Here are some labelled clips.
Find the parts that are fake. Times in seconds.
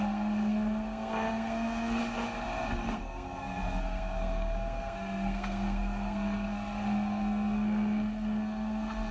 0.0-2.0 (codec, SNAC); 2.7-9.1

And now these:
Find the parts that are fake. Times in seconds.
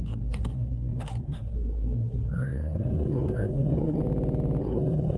0.0-4.0 (codec, SNAC); 4.6-5.2